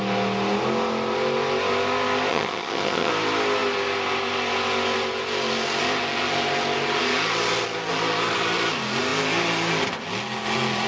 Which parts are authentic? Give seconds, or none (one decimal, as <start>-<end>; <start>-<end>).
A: 0.0-2.3; 3.1-10.9